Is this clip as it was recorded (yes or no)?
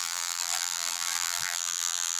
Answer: no